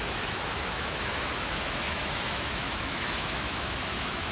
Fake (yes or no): yes